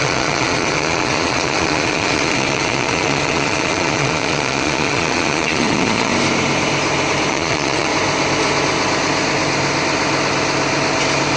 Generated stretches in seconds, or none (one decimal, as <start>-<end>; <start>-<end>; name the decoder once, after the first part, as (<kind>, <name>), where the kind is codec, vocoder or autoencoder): 0.0-6.1 (vocoder, Vocos); 7.3-7.9